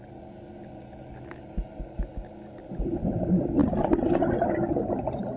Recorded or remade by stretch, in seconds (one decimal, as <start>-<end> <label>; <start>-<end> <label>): 0.0-5.4 recorded